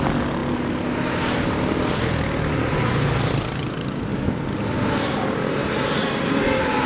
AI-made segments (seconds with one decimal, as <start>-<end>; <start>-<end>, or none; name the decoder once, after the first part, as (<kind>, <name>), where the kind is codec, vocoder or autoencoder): 0.0-0.4 (vocoder, BigVGAN v2); 3.2-4.1; 6.4-6.9

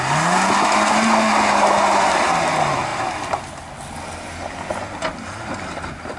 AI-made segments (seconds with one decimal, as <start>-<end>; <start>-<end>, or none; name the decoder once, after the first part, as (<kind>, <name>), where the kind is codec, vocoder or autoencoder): none

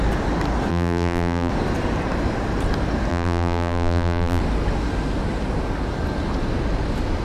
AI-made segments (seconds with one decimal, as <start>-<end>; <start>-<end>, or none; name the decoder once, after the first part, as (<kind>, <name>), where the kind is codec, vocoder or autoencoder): 0.7-1.5 (vocoder, BigVGAN v2); 3.1-4.4

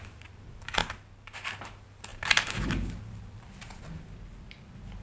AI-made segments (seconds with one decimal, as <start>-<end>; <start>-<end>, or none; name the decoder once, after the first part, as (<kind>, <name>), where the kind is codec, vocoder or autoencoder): none